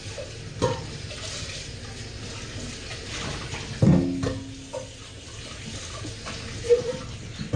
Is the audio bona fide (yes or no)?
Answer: yes